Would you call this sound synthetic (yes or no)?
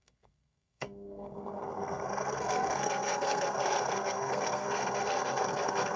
yes